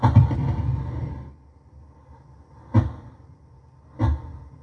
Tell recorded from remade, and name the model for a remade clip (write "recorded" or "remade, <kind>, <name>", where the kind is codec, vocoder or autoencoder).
recorded